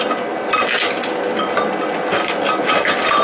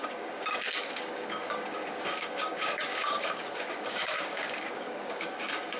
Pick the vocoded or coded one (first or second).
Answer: second